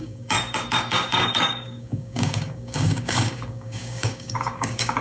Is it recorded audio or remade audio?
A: remade